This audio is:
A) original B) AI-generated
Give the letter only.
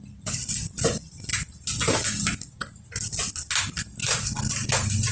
A